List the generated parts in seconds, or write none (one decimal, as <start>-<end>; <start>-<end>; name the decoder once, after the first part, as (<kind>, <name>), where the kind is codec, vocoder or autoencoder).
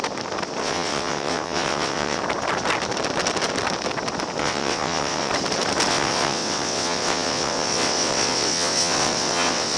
0.6-2.2 (vocoder, WaveNeXt); 4.4-5.3; 5.9-9.8